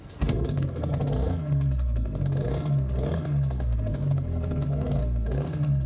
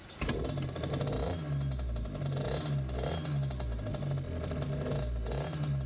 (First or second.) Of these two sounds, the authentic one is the second